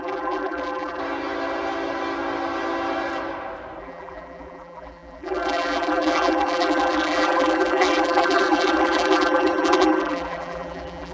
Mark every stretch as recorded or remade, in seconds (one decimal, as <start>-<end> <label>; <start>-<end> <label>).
0.0-1.0 remade; 1.0-3.8 recorded; 3.8-11.1 remade